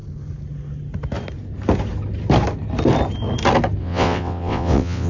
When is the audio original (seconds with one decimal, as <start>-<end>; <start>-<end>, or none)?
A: 0.0-3.8